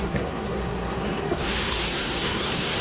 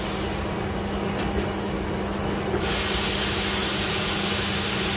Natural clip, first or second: second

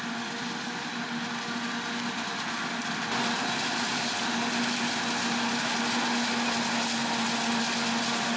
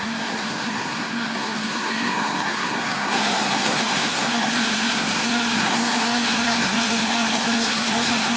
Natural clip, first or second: first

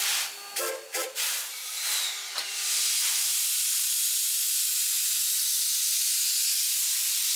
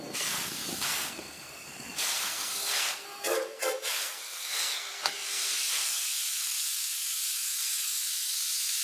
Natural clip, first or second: first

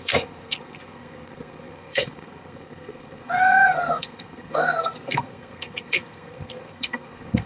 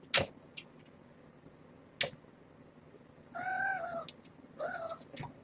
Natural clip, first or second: second